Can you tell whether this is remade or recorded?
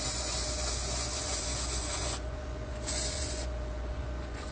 remade